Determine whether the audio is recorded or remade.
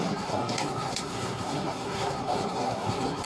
remade